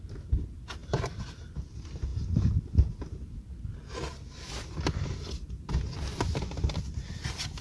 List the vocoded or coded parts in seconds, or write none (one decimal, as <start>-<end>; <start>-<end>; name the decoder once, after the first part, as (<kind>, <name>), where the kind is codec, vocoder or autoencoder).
none